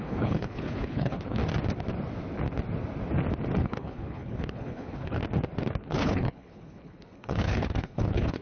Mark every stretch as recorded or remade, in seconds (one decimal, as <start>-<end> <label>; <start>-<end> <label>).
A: 0.0-1.4 remade; 1.4-3.6 recorded; 3.6-5.2 remade; 5.2-5.8 recorded; 5.8-8.4 remade

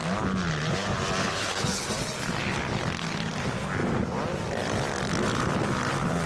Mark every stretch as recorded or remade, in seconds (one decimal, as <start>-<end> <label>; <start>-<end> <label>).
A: 0.0-1.2 recorded; 1.2-1.9 remade; 1.9-6.3 recorded

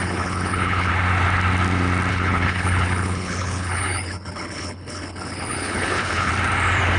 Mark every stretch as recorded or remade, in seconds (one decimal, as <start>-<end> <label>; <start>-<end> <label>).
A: 0.0-0.9 remade; 0.9-2.1 recorded; 2.1-6.3 remade; 6.3-7.0 recorded

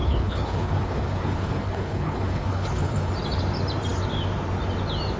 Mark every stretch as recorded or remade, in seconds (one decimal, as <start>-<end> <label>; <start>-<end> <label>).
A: 0.0-3.1 remade; 3.1-5.2 recorded

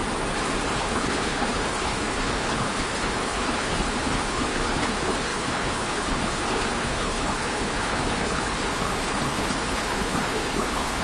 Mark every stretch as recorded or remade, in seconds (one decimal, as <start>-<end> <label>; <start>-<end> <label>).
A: 0.0-0.8 recorded; 0.8-11.0 remade

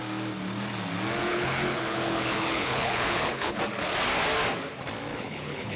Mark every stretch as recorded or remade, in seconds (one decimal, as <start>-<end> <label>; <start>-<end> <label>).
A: 0.0-1.3 recorded; 1.3-3.6 remade; 3.6-5.1 recorded; 5.1-5.8 remade